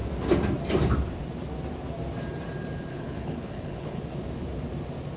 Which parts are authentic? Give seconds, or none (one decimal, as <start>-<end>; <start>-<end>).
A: 0.0-2.9; 4.0-5.2